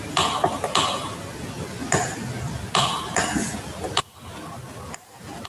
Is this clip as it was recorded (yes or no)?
yes